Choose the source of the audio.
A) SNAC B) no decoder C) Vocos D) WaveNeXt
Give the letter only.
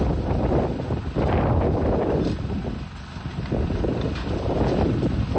B